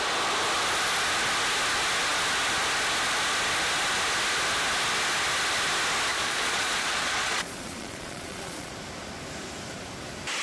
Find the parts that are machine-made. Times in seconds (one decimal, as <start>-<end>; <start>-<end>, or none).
6.1-8.7